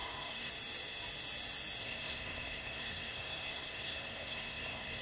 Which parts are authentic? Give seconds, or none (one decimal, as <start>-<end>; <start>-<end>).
0.5-1.8